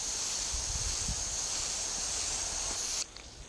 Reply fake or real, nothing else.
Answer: real